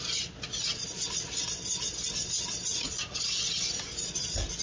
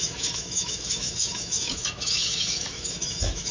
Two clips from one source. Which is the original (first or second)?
first